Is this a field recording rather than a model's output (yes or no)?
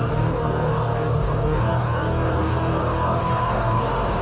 no